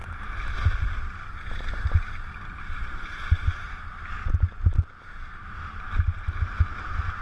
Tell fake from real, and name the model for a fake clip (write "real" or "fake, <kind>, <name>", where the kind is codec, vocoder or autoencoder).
real